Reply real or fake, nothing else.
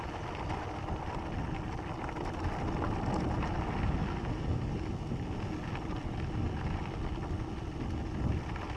real